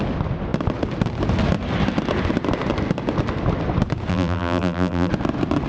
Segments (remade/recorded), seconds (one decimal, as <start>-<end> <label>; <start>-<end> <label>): 0.0-4.1 recorded; 4.1-5.1 remade; 5.1-5.7 recorded